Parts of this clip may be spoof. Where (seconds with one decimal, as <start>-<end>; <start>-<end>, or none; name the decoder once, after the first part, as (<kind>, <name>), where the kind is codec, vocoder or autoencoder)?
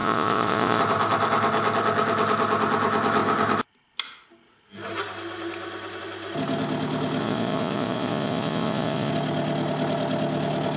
0.0-0.8 (vocoder, Vocos); 7.2-9.1